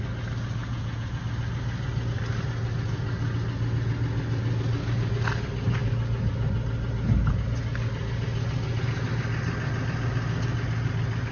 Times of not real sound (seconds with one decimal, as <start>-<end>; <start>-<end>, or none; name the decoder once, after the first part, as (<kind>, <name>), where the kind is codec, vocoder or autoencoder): 0.6-1.2 (vocoder, Vocos)